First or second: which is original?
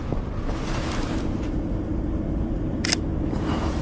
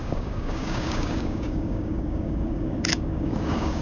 first